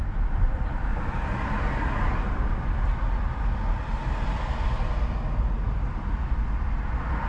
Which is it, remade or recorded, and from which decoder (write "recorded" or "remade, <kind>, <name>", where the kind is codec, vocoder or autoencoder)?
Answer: recorded